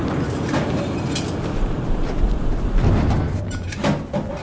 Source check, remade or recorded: recorded